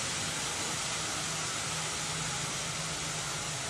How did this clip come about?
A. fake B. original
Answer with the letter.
B